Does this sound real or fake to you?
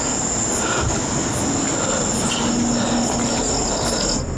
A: real